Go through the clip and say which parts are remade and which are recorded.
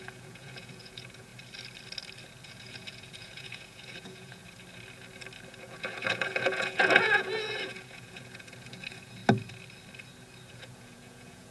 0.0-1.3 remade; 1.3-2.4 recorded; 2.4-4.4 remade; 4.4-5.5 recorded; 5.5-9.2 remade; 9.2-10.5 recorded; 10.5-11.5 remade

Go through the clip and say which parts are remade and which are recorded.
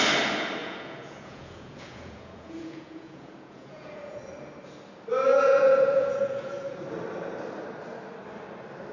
0.0-0.6 recorded; 0.6-4.2 remade; 4.2-5.3 recorded; 5.3-6.8 remade; 6.8-8.9 recorded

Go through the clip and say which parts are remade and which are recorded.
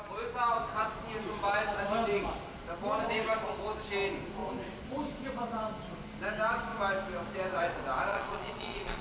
0.0-8.1 recorded; 8.1-9.0 remade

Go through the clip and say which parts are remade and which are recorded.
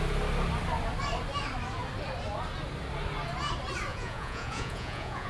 0.0-3.9 recorded; 3.9-5.3 remade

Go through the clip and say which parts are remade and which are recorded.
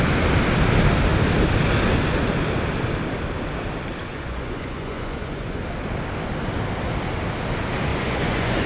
0.0-4.1 recorded; 4.1-5.6 remade; 5.6-7.9 recorded; 7.9-8.7 remade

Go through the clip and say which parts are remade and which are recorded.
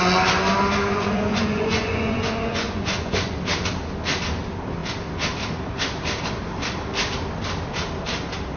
0.0-0.9 recorded; 0.9-3.3 remade; 3.3-8.6 recorded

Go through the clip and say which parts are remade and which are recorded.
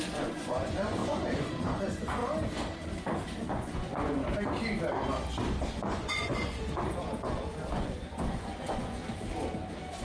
0.0-2.2 remade; 2.2-3.5 recorded; 3.5-4.2 remade; 4.2-5.7 recorded; 5.7-9.0 remade; 9.0-10.0 recorded